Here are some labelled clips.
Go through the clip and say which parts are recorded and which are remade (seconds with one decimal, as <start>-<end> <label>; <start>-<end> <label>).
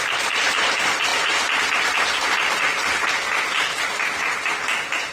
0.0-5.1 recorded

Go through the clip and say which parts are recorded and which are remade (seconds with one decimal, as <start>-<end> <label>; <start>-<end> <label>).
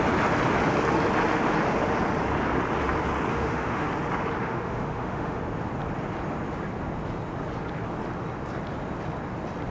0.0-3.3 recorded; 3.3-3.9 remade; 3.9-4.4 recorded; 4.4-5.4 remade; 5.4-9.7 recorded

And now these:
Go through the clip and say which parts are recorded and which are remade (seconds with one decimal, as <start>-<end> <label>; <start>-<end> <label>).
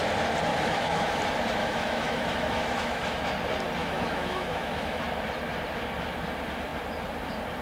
0.0-0.5 recorded; 0.5-1.2 remade; 1.2-1.6 recorded; 1.6-3.2 remade; 3.2-3.8 recorded; 3.8-5.0 remade; 5.0-7.6 recorded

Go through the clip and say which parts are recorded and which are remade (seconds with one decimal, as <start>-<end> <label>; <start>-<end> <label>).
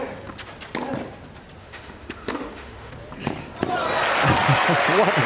0.0-1.6 recorded; 1.6-2.9 remade; 2.9-5.3 recorded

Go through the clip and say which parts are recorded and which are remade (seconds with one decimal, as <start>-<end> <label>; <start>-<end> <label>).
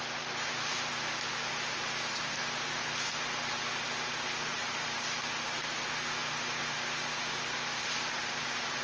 0.0-8.8 recorded